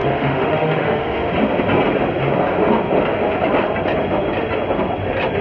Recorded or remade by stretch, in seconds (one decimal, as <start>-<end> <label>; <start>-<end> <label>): 0.0-1.3 remade; 1.3-5.4 recorded

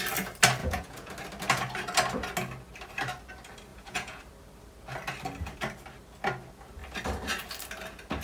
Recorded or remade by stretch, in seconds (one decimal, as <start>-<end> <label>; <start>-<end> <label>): 0.0-0.6 recorded; 0.6-1.1 remade; 1.1-3.7 recorded; 3.7-4.2 remade; 4.2-8.2 recorded

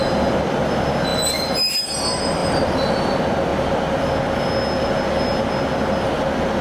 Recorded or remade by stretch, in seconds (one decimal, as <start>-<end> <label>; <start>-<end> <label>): 0.0-2.4 recorded; 2.4-2.9 remade; 2.9-6.6 recorded

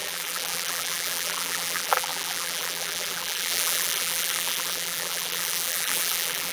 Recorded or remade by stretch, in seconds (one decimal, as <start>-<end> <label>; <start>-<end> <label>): 0.0-6.5 remade

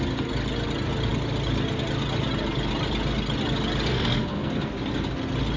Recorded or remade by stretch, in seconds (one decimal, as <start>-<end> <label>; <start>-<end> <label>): 0.0-3.9 recorded; 3.9-4.7 remade; 4.7-5.6 recorded

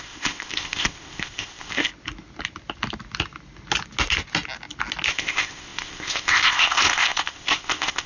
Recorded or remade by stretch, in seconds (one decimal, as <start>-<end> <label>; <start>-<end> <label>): 0.0-1.9 remade; 1.9-5.1 recorded; 5.1-8.1 remade

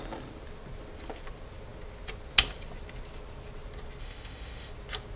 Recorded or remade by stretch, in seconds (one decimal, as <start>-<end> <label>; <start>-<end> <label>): 0.0-4.0 recorded; 4.0-4.7 remade; 4.7-5.2 recorded